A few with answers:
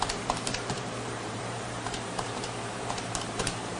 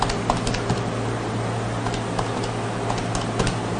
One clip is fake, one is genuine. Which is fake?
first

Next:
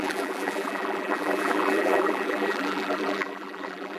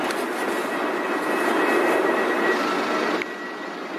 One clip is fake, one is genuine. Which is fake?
first